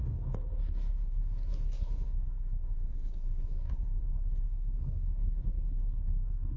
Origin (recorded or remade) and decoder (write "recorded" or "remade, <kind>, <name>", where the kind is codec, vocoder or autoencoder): remade, codec, SNAC